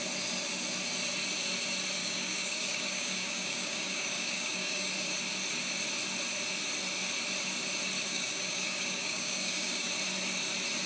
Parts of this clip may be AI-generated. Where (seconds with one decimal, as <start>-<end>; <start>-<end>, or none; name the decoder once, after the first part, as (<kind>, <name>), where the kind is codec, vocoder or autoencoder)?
2.0-4.9 (codec, DAC); 8.1-9.9